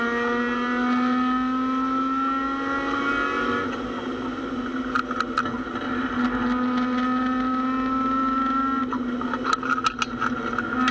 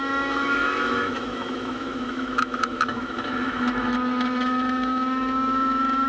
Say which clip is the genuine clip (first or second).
first